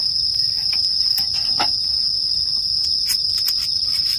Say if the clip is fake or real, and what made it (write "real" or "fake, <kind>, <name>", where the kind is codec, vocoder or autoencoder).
real